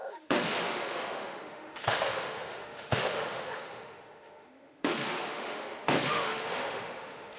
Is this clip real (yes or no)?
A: no